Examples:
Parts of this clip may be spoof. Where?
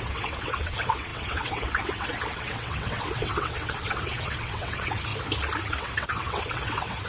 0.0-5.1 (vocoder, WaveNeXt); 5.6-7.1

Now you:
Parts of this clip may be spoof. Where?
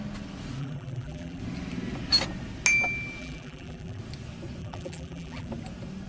0.6-1.4 (vocoder, BigVGAN v2); 3.2-4.0; 4.6-5.5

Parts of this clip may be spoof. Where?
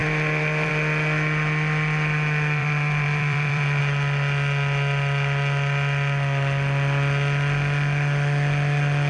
0.0-0.7 (vocoder, BigVGAN v2); 2.6-3.8